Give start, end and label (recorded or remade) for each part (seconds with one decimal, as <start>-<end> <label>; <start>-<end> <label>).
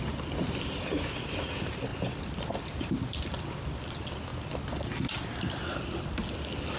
0.0-6.8 recorded